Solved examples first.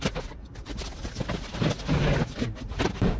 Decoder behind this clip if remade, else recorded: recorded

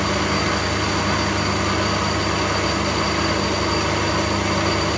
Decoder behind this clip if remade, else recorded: recorded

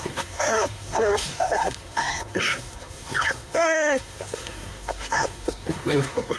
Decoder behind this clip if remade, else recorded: remade, codec, SNAC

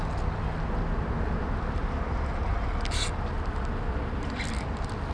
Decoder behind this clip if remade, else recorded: recorded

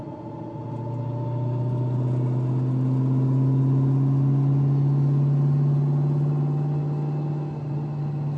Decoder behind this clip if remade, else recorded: recorded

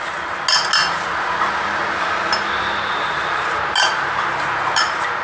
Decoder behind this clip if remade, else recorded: recorded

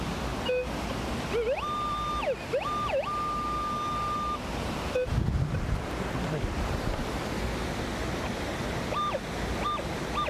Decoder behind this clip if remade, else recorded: recorded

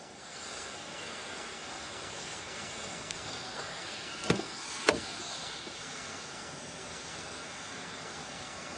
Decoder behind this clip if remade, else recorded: remade, codec, SNAC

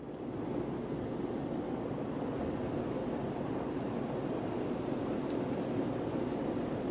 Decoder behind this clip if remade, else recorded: recorded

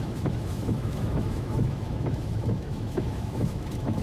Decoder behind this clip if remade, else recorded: remade, autoencoder, DAC-VAE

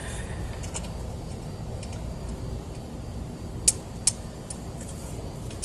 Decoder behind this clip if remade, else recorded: recorded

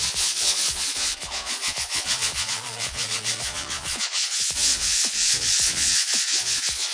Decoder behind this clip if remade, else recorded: remade, vocoder, Vocos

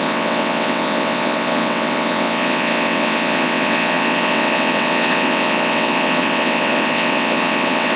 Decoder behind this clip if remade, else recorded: remade, vocoder, WaveNeXt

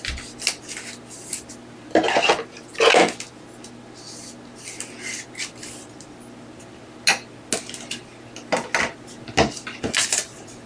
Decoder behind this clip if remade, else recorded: recorded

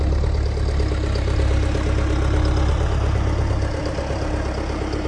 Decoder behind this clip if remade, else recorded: recorded